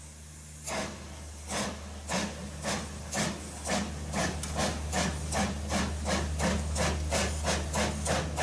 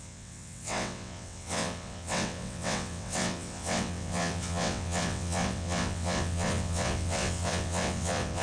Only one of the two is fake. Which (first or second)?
second